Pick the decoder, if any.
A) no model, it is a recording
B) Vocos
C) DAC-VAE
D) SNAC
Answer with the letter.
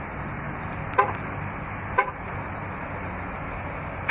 A